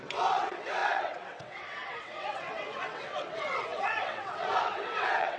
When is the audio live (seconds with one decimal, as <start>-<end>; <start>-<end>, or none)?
none